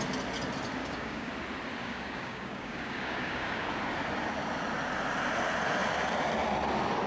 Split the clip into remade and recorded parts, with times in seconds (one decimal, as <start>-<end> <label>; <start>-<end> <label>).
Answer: 0.0-0.8 recorded; 0.8-1.3 remade; 1.3-1.8 recorded; 1.8-3.7 remade; 3.7-7.1 recorded